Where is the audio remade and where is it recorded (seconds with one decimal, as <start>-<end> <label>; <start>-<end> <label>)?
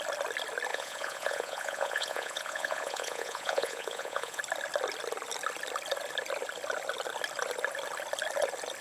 0.0-0.7 recorded; 0.7-4.4 remade; 4.4-8.8 recorded